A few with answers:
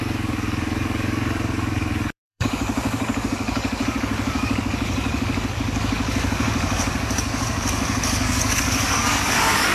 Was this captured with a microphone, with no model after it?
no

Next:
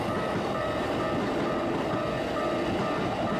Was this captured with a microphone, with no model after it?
yes